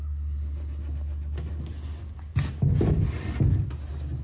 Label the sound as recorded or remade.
recorded